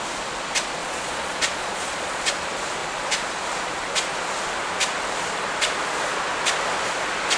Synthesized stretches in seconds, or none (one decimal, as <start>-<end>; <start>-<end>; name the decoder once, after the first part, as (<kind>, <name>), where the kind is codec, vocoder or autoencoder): 0.8-2.3 (vocoder, Vocos)